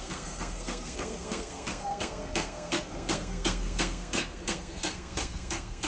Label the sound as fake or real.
fake